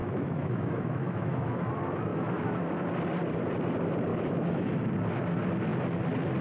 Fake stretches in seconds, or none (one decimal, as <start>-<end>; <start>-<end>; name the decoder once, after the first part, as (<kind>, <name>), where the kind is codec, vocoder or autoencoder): 0.0-1.7 (autoencoder, DAC-VAE); 2.1-2.6; 4.1-4.8